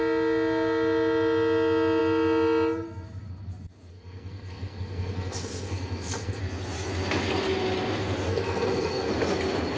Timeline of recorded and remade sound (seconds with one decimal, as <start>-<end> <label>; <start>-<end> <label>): 0.0-3.9 recorded; 3.9-6.4 remade; 6.4-8.3 recorded; 8.3-9.1 remade; 9.1-9.8 recorded